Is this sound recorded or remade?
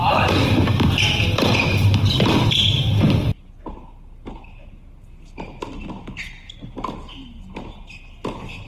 recorded